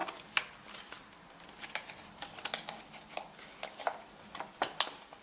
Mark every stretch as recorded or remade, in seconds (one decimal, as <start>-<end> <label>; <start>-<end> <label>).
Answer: 0.0-5.2 recorded